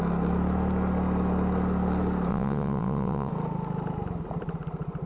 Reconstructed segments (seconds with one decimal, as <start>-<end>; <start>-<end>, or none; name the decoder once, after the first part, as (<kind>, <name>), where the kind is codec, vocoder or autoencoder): 2.3-3.3 (vocoder, WaveNeXt)